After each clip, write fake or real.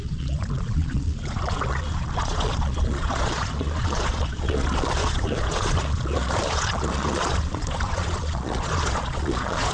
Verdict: fake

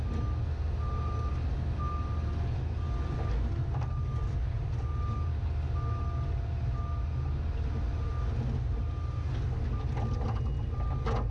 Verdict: real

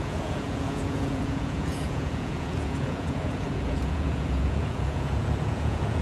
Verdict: fake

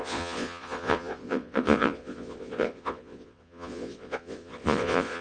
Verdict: fake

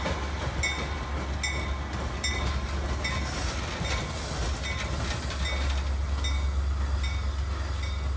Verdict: real